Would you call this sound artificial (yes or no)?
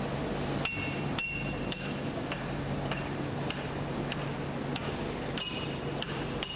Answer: yes